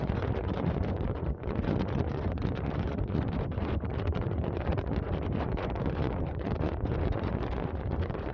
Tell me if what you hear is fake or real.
fake